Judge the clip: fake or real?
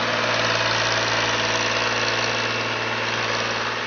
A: real